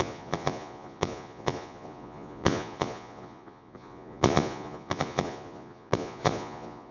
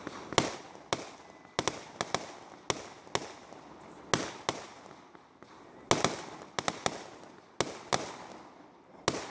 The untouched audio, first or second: second